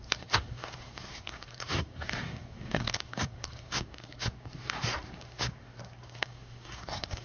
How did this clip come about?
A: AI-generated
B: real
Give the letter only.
A